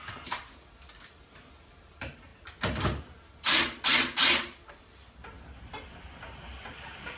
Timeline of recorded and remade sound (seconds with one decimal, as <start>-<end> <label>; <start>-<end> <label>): 0.0-7.2 recorded